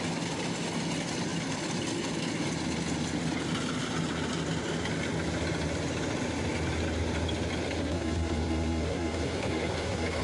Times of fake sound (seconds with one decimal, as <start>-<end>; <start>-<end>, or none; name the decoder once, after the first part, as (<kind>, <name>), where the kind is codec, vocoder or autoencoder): 7.8-10.2 (codec, SNAC)

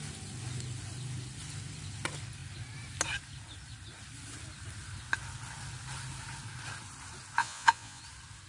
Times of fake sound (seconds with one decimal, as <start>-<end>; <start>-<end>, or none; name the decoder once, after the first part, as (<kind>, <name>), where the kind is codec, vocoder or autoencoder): 7.4-8.0 (vocoder, Vocos)

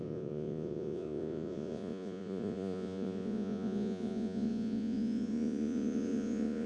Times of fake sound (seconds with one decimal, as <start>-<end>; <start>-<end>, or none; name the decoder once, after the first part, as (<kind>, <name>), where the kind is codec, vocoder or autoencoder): 0.0-6.7 (vocoder, Vocos)

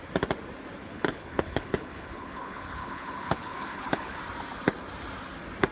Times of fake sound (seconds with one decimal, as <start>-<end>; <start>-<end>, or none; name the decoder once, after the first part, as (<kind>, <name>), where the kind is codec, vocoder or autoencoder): 0.8-4.2 (codec, HILCodec)

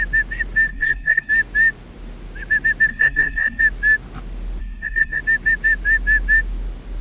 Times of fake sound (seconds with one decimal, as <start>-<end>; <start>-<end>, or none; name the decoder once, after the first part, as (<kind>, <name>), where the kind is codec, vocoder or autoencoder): 0.7-1.3 (codec, SNAC); 2.9-3.6; 4.6-5.2

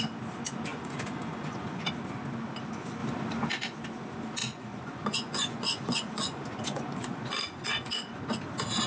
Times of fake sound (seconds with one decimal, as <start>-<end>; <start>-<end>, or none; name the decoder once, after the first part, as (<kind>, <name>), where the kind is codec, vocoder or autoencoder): 0.7-1.9 (vocoder, Vocos); 4.4-8.2